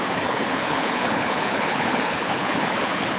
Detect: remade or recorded remade